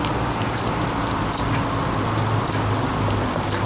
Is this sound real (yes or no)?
yes